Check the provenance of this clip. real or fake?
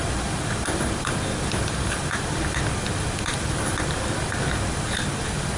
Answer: real